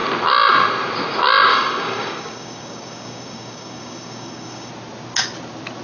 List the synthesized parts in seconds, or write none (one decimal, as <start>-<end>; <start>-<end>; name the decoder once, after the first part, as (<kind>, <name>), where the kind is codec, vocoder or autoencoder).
1.5-4.7 (codec, DAC)